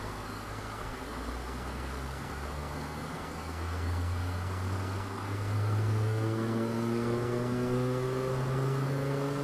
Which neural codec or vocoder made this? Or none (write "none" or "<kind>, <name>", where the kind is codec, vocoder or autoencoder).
codec, SNAC